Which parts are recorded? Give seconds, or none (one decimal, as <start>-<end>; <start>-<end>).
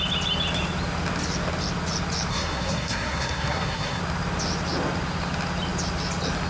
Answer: 0.0-2.3; 4.0-6.5